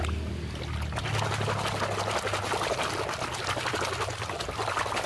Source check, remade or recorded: recorded